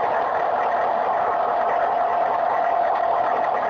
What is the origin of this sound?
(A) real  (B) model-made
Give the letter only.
A